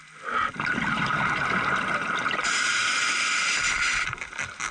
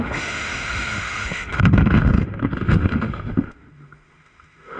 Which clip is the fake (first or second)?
second